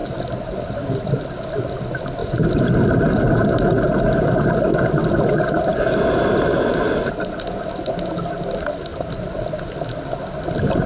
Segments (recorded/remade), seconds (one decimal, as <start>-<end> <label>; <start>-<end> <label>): 0.0-1.3 remade; 1.3-2.2 recorded; 2.2-2.7 remade; 2.7-4.7 recorded; 4.7-7.1 remade; 7.1-8.9 recorded; 8.9-9.5 remade; 9.5-10.9 recorded

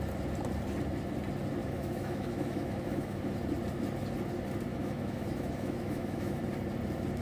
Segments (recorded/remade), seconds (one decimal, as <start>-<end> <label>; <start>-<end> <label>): 0.0-1.6 recorded; 1.6-3.2 remade; 3.2-4.7 recorded; 4.7-6.4 remade; 6.4-7.2 recorded

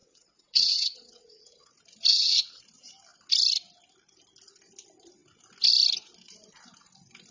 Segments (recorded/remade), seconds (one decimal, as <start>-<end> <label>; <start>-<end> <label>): 0.0-1.7 remade; 1.7-2.1 recorded; 2.1-2.6 remade; 2.6-7.3 recorded

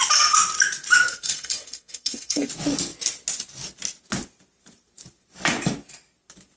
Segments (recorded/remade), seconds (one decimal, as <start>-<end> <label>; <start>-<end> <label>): 0.0-1.1 recorded; 1.1-2.5 remade; 2.5-6.6 recorded

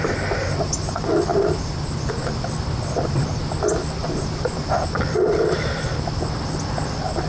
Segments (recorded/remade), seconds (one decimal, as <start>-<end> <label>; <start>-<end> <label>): 0.0-1.3 recorded; 1.3-2.3 remade; 2.3-4.0 recorded; 4.0-4.7 remade; 4.7-7.3 recorded

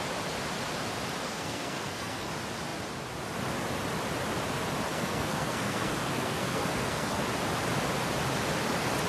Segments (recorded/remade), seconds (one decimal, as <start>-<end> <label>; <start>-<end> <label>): 0.0-1.2 recorded; 1.2-2.3 remade; 2.3-4.9 recorded; 4.9-7.2 remade; 7.2-9.1 recorded